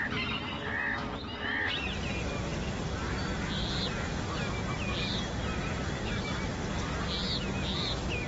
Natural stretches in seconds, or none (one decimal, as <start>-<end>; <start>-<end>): 0.0-8.3